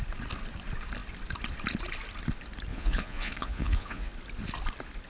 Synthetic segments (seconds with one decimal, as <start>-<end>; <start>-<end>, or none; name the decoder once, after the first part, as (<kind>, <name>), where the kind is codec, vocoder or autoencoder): 2.7-4.1 (vocoder, Vocos)